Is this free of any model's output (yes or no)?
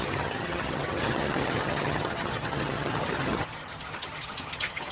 no